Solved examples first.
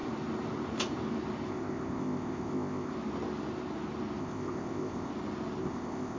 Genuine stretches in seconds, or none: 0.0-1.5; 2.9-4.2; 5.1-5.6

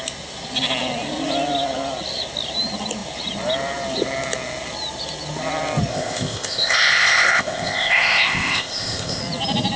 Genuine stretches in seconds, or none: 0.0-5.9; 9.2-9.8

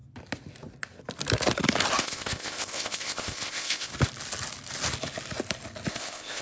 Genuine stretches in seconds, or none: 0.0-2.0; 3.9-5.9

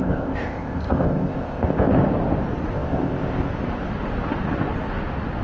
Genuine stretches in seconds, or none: 1.9-2.7; 3.5-5.4

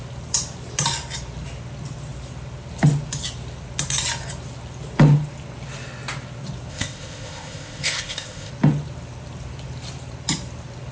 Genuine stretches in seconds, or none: 0.0-6.7; 8.5-10.9